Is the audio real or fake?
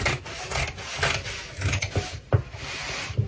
real